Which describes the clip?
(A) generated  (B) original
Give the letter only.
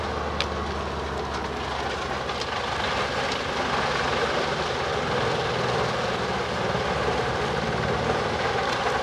B